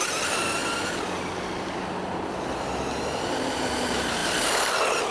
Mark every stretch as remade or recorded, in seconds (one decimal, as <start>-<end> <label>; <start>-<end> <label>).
0.0-5.1 recorded